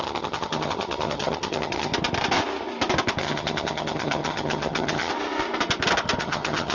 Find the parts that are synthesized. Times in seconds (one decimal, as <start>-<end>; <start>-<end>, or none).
0.0-1.9; 3.2-5.1; 6.2-6.7